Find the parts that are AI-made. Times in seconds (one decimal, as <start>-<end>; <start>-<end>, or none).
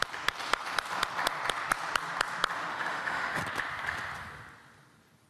2.7-3.4